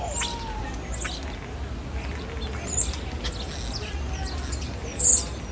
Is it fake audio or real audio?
real